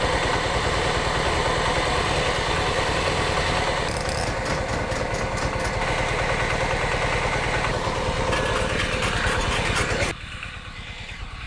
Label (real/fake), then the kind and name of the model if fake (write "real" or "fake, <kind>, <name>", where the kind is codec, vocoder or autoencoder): real